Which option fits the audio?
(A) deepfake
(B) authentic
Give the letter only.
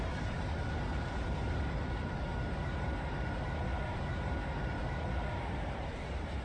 A